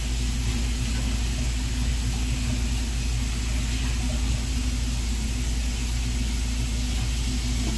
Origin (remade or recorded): recorded